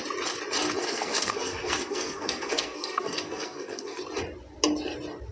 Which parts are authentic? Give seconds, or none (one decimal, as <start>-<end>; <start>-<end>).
0.0-0.8; 4.0-5.3